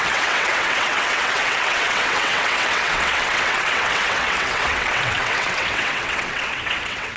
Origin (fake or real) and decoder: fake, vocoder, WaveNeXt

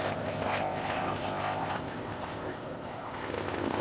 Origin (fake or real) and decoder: fake, codec, ZipCodec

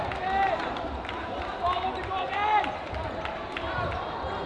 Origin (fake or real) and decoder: real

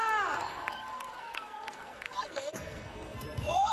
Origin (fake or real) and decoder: fake, codec, SNAC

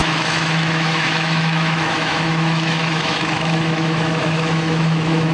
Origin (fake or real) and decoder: fake, autoencoder, DAC-VAE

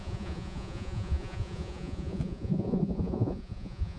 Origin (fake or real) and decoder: fake, vocoder, Vocos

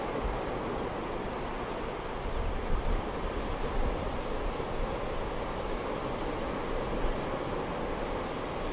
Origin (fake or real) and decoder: real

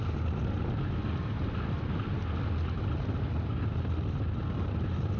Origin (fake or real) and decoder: real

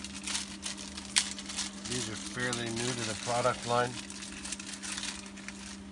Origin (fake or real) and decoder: real